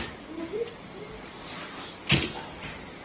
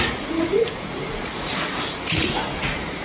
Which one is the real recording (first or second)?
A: first